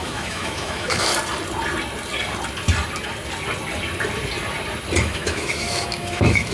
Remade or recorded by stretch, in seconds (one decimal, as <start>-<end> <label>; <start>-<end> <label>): 0.0-1.1 remade; 1.1-5.0 recorded; 5.0-6.5 remade